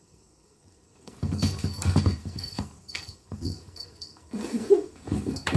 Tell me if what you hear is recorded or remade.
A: remade